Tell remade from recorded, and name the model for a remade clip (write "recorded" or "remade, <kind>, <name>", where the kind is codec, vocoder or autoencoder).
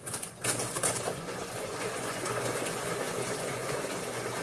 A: remade, vocoder, Vocos